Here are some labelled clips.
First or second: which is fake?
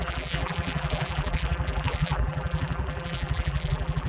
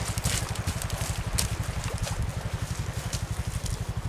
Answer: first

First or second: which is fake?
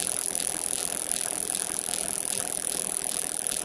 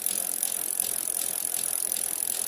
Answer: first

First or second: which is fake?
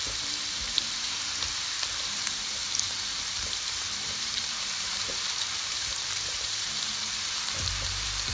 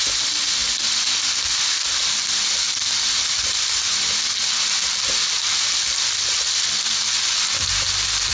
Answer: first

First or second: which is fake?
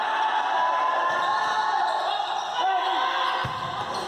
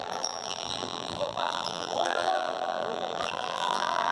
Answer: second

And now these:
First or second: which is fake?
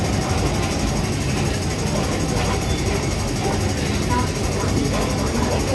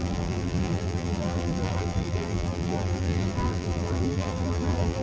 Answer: second